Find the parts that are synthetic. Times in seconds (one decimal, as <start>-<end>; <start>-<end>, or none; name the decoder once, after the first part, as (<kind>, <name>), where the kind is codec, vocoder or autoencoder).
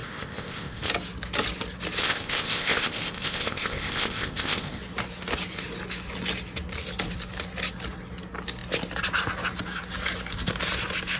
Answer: 0.0-0.9 (codec, ZipCodec); 2.0-4.8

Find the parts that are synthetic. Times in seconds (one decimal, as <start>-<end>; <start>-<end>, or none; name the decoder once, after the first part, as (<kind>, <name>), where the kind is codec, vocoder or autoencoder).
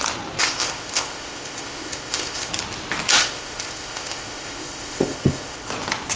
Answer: 0.4-2.5 (codec, ZipCodec); 3.2-5.7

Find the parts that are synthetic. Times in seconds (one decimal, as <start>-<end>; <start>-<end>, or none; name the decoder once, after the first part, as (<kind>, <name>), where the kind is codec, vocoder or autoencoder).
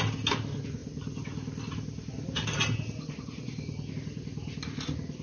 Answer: none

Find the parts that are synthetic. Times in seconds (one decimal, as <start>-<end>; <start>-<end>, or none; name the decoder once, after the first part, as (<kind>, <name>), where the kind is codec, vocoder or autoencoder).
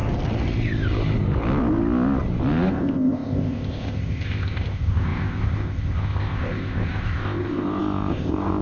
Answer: 2.7-8.6 (codec, ZipCodec)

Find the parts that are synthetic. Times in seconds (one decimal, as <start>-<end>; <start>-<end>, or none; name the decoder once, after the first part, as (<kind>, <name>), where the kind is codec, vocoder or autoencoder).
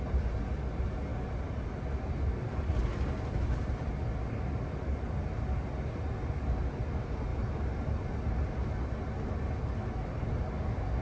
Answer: none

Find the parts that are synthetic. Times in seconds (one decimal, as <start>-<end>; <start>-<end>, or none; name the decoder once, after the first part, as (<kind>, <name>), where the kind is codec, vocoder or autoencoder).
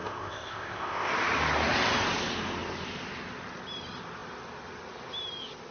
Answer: 0.0-1.1 (codec, ZipCodec)